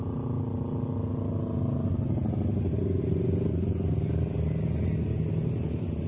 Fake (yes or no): no